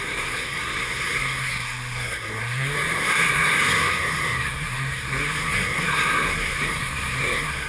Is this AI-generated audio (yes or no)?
yes